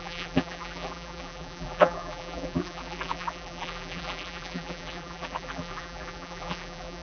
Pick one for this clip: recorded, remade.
remade